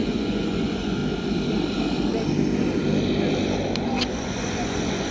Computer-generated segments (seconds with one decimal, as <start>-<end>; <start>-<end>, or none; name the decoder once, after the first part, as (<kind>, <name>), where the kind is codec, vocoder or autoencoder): 0.0-1.0 (vocoder, Vocos); 4.1-5.1